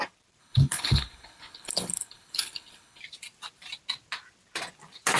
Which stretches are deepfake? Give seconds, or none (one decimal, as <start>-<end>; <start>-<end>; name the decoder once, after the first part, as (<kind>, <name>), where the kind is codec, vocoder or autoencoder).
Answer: 0.4-3.0 (codec, HILCodec)